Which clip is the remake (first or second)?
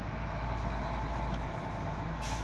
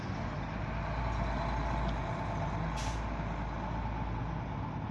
first